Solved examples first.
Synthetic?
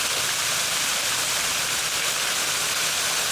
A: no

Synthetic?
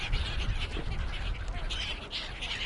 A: no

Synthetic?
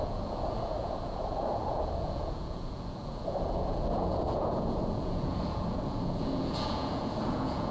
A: yes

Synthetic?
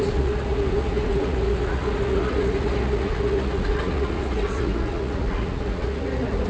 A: yes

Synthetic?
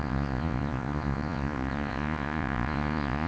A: yes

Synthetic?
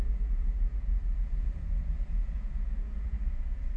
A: yes